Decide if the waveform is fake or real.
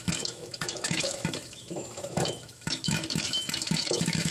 fake